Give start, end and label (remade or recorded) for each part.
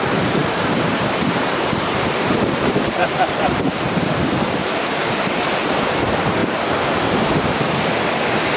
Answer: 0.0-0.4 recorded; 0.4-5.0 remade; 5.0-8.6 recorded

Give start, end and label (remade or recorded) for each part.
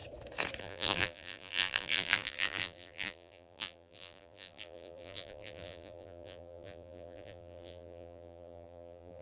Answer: 0.0-0.6 recorded; 0.6-9.2 remade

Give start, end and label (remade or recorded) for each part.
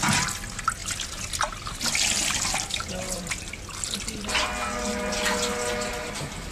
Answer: 0.0-6.5 recorded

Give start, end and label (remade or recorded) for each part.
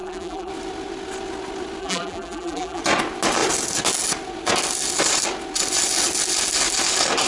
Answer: 0.0-0.5 remade; 0.5-1.8 recorded; 1.8-2.8 remade; 2.8-7.3 recorded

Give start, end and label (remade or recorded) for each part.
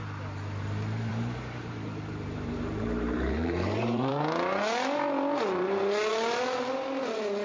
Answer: 0.0-1.1 recorded; 1.1-4.1 remade; 4.1-7.4 recorded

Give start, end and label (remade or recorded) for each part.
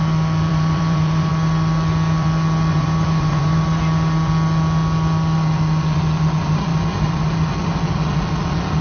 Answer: 0.0-0.5 recorded; 0.5-1.3 remade; 1.3-2.7 recorded; 2.7-3.8 remade; 3.8-6.7 recorded; 6.7-7.3 remade; 7.3-8.8 recorded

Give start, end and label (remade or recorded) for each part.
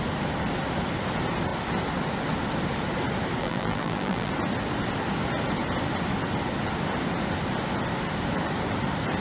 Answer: 0.0-3.4 recorded; 3.4-4.3 remade; 4.3-9.2 recorded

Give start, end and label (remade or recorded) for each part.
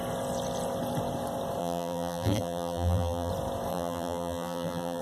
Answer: 0.0-1.6 recorded; 1.6-3.3 remade; 3.3-3.7 recorded; 3.7-5.0 remade